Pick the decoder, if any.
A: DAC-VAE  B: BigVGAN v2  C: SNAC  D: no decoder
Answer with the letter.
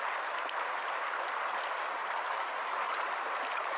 D